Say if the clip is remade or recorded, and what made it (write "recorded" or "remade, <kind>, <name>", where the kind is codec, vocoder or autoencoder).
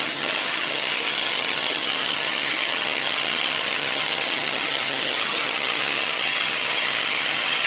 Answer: remade, vocoder, HiFi-GAN